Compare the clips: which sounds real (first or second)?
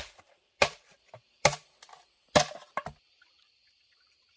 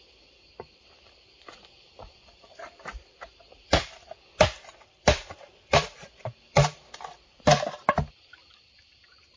first